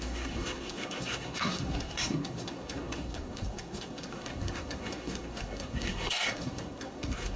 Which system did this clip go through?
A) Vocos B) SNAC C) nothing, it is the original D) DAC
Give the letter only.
B